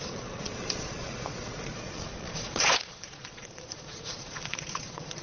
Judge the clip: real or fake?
fake